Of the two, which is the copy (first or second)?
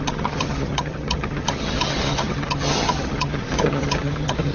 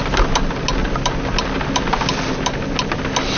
first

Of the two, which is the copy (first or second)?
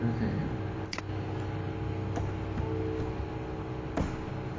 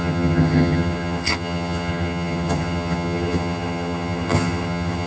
second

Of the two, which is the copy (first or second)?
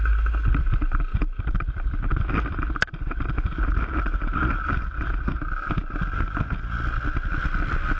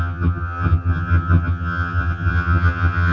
second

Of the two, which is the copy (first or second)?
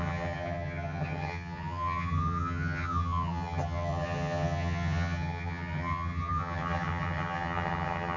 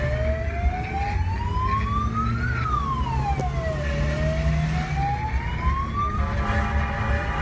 first